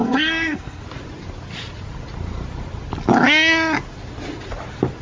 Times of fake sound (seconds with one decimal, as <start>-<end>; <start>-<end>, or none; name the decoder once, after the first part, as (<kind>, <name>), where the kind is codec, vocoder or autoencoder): 0.0-0.8 (codec, SNAC)